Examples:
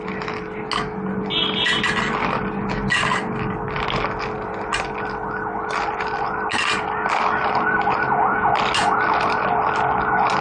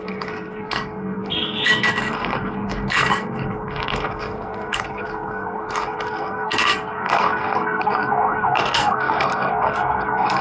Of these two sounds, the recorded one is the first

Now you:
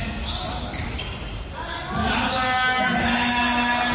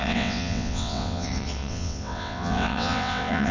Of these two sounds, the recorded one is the first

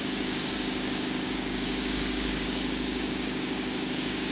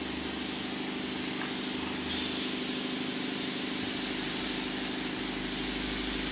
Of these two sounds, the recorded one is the second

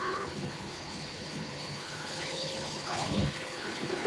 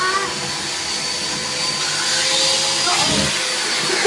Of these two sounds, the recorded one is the second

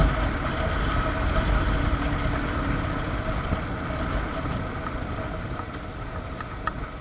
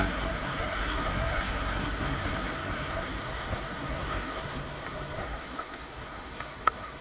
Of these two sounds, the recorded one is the first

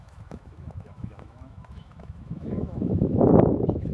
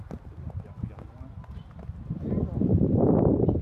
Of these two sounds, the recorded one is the second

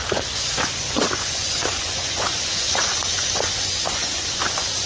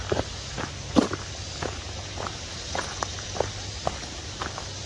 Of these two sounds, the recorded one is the second